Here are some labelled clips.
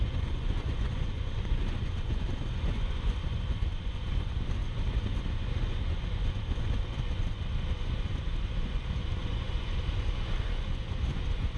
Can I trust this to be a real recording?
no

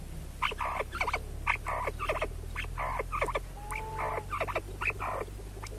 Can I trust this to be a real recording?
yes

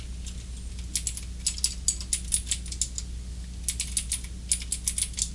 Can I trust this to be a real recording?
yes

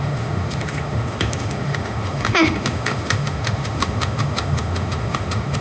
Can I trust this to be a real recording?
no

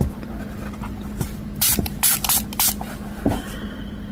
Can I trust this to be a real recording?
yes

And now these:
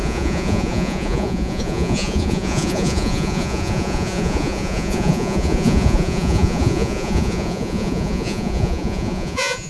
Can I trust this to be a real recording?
no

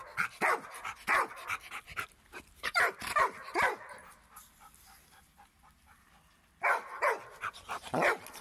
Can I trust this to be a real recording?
yes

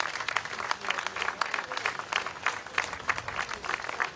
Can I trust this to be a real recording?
yes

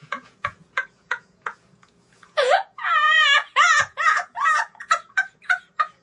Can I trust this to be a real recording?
no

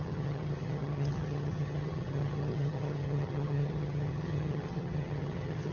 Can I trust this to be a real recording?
no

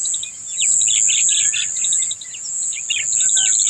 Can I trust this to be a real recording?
yes